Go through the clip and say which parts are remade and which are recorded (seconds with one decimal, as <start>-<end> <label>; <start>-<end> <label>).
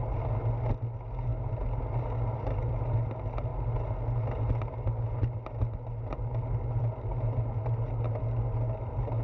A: 0.0-9.2 recorded